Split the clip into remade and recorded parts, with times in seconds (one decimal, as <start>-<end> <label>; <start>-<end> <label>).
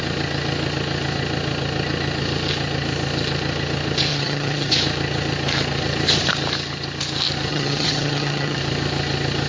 0.0-4.1 recorded; 4.1-4.7 remade; 4.7-7.5 recorded; 7.5-8.6 remade; 8.6-9.5 recorded